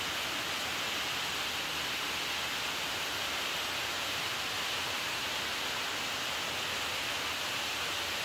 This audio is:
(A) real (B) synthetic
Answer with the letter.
A